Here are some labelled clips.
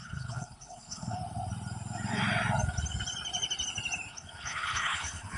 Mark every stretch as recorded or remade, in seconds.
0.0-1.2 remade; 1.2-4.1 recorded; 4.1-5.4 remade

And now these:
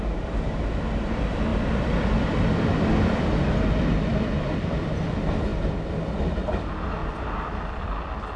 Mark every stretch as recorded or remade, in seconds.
0.0-1.5 recorded; 1.5-5.1 remade; 5.1-5.5 recorded; 5.5-6.0 remade; 6.0-7.0 recorded; 7.0-7.9 remade; 7.9-8.4 recorded

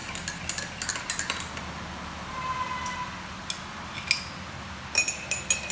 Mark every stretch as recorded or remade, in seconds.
0.0-5.7 recorded

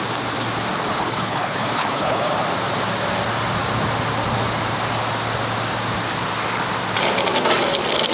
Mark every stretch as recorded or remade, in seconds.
0.0-0.9 recorded; 0.9-2.3 remade; 2.3-8.1 recorded

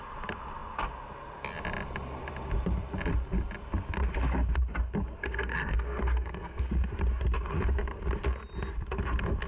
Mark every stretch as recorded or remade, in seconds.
0.0-5.2 recorded; 5.2-6.7 remade; 6.7-9.5 recorded